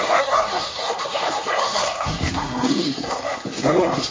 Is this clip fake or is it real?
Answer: fake